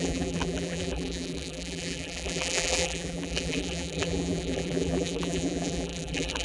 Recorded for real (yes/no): no